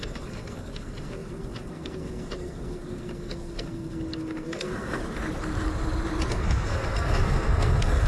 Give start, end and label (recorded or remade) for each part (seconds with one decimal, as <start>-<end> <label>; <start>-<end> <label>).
0.0-5.0 remade; 5.0-6.3 recorded; 6.3-8.1 remade